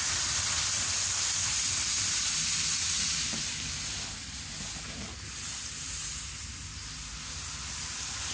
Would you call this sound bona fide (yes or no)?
yes